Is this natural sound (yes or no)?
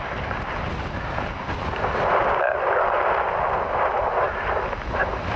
yes